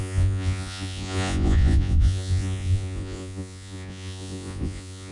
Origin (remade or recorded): remade